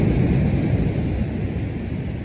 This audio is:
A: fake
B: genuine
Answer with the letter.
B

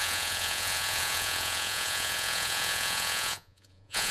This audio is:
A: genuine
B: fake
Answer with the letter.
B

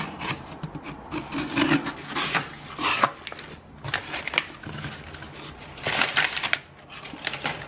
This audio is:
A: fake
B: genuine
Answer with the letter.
B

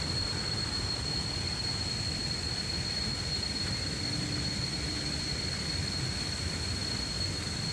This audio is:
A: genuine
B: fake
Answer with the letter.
A